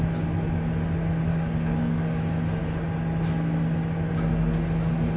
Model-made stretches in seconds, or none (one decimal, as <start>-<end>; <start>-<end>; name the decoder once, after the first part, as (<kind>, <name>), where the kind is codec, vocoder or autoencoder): 1.3-2.2 (codec, DAC)